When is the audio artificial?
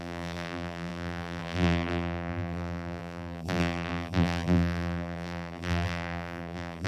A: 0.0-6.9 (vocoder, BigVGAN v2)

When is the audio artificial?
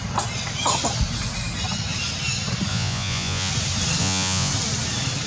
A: 2.7-3.5 (vocoder, Vocos); 4.0-4.5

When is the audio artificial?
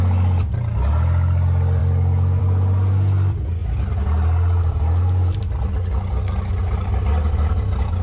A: none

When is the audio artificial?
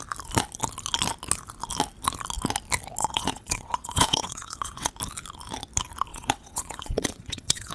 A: 3.0-4.9 (vocoder, WaveNeXt); 6.1-7.7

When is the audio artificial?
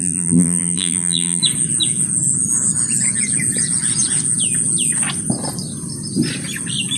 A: 0.0-1.4 (vocoder, BigVGAN v2)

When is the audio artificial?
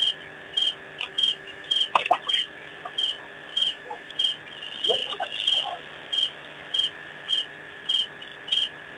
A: 1.1-1.7 (autoencoder, DAC-VAE); 3.5-4.1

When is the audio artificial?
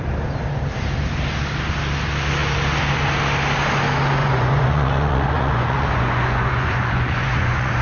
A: 4.2-7.8 (vocoder, Vocos)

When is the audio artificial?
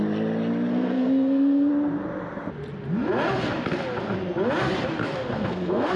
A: 0.7-1.7 (codec, SNAC); 5.0-6.0